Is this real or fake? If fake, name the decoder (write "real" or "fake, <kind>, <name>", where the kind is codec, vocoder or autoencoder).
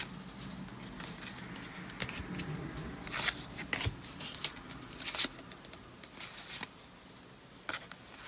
real